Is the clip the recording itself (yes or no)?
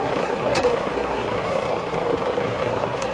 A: no